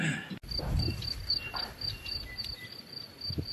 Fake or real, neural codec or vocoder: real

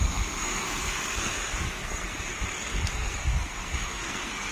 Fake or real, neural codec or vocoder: fake, codec, SNAC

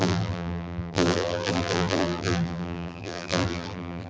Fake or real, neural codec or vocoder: fake, vocoder, BigVGAN v2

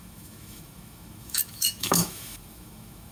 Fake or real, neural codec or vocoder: fake, autoencoder, DAC-VAE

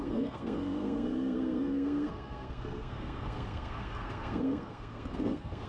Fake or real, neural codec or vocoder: fake, codec, SNAC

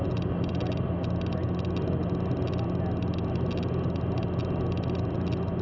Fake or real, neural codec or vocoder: real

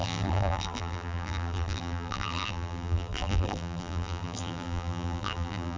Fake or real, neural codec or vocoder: fake, vocoder, BigVGAN v2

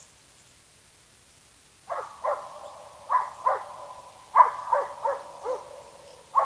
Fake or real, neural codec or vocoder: real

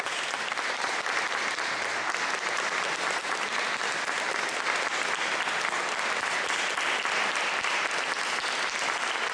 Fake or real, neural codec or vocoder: real